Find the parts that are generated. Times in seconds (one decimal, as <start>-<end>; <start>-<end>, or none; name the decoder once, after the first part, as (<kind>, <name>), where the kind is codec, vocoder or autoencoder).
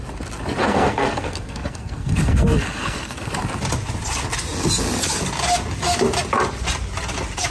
0.6-3.3 (codec, SNAC)